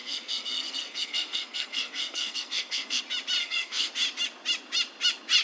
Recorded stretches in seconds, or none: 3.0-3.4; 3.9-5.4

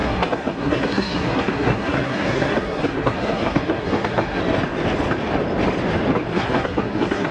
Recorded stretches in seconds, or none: 4.4-6.3